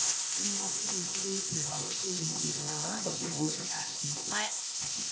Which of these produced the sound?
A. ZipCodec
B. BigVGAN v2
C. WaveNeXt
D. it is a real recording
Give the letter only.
A